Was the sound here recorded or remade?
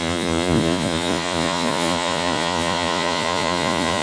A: remade